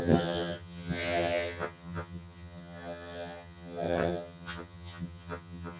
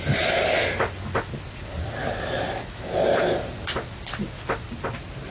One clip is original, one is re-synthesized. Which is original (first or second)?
second